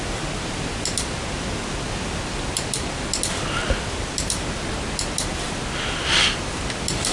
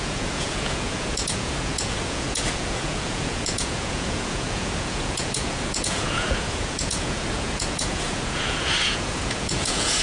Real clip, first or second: first